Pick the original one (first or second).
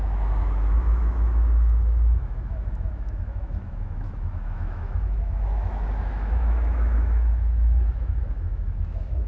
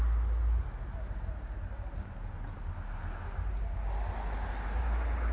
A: second